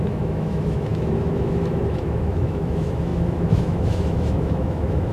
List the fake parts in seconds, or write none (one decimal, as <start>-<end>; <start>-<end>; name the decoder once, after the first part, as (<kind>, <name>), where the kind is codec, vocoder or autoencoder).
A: 0.0-5.1 (autoencoder, DAC-VAE)